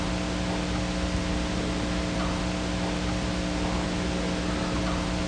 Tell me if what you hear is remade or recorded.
recorded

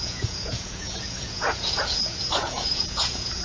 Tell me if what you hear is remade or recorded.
remade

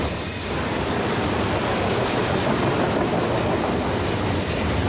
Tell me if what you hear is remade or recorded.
recorded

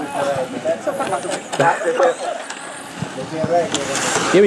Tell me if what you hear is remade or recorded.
recorded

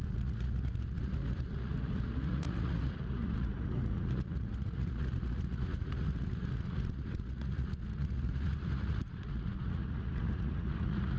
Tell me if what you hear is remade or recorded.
remade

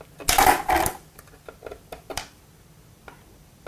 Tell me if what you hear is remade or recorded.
recorded